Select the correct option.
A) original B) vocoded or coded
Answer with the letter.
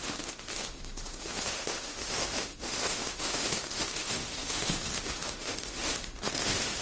B